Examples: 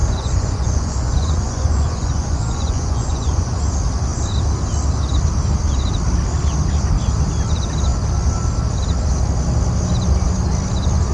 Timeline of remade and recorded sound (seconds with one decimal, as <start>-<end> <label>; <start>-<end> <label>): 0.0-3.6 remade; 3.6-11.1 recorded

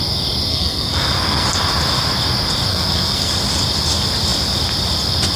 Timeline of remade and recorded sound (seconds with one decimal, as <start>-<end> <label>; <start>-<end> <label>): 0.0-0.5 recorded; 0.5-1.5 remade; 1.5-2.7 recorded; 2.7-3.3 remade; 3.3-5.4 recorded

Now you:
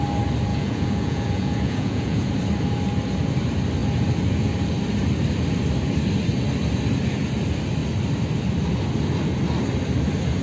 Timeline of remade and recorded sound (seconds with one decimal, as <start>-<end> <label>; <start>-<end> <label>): 0.0-0.5 recorded; 0.5-2.3 remade; 2.3-10.4 recorded

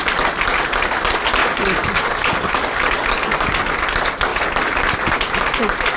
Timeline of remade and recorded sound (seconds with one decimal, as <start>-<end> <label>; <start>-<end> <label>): 0.0-1.4 recorded; 1.4-3.7 remade; 3.7-6.0 recorded

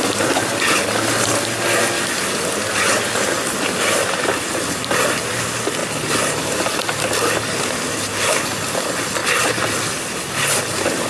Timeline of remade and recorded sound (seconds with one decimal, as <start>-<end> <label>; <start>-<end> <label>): 0.0-11.1 recorded

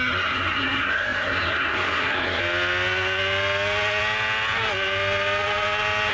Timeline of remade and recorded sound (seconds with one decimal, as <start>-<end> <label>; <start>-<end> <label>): 0.0-2.4 remade; 2.4-6.1 recorded

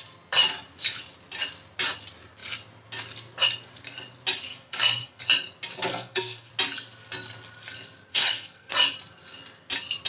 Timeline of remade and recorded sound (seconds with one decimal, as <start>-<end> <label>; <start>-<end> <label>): 0.0-4.5 recorded; 4.5-5.2 remade; 5.2-5.9 recorded; 5.9-6.5 remade; 6.5-8.1 recorded; 8.1-8.7 remade; 8.7-10.1 recorded

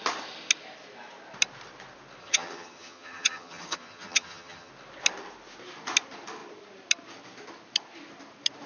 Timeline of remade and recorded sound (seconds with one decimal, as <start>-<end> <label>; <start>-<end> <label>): 0.0-2.2 recorded; 2.2-4.7 remade; 4.7-8.7 recorded